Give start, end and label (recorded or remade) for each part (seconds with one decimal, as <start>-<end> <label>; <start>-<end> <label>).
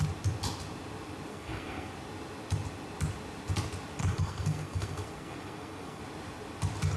0.0-1.3 recorded; 1.3-1.9 remade; 1.9-4.0 recorded; 4.0-6.0 remade; 6.0-7.0 recorded